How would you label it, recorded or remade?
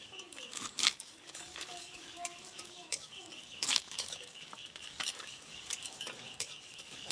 remade